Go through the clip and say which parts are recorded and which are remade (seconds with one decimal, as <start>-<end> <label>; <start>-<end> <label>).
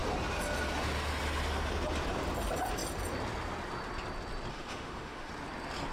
0.0-4.5 recorded; 4.5-5.3 remade; 5.3-5.9 recorded